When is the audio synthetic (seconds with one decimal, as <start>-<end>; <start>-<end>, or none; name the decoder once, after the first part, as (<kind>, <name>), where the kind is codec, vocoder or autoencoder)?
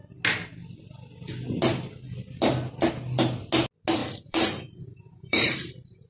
4.0-6.1 (vocoder, BigVGAN v2)